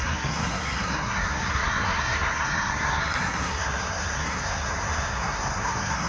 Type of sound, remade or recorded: remade